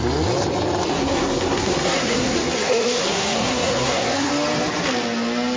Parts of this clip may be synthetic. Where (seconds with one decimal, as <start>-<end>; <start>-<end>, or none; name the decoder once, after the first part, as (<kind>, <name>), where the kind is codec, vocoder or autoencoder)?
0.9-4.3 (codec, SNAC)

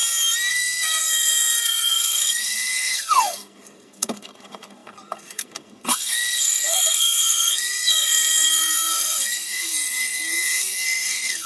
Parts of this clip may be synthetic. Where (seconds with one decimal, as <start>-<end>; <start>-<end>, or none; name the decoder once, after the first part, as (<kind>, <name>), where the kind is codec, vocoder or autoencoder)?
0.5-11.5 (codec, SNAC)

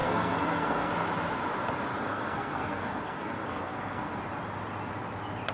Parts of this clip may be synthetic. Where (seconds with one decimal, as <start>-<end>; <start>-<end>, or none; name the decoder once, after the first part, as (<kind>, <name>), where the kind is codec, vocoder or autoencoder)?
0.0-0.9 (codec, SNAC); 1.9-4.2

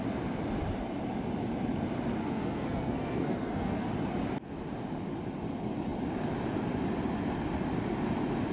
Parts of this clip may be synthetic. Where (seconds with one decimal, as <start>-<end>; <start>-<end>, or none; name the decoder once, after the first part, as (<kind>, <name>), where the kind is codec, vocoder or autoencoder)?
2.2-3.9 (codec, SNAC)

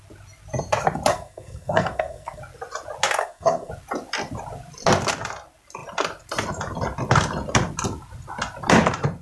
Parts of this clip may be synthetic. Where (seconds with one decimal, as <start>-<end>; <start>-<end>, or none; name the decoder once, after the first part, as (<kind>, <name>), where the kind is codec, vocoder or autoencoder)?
1.1-2.4 (codec, SNAC); 3.2-3.7